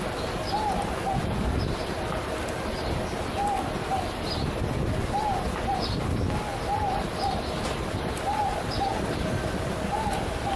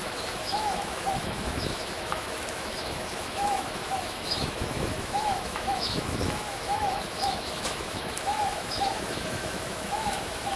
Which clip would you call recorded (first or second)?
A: first